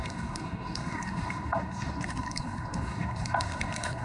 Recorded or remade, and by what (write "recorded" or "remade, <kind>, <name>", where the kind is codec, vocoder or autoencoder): remade, codec, SNAC